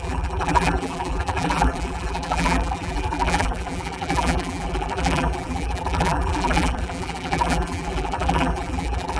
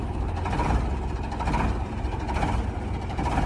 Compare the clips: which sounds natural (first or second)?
second